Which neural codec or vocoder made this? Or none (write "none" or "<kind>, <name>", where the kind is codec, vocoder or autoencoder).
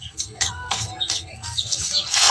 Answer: codec, SNAC